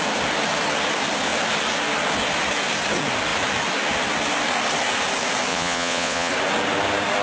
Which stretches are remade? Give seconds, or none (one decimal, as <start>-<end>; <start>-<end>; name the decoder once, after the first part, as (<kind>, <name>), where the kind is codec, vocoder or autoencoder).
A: 5.5-6.3 (vocoder, Vocos)